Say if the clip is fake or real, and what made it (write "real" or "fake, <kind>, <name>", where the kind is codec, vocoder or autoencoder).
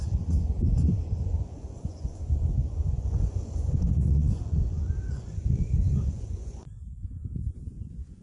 fake, vocoder, Vocos